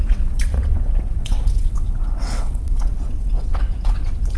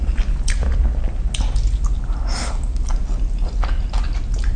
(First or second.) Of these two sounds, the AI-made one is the first